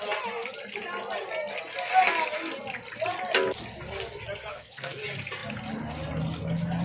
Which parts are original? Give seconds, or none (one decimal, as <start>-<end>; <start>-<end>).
0.0-4.5; 5.0-6.8